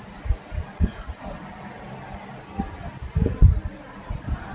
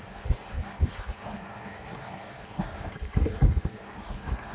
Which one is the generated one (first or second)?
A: second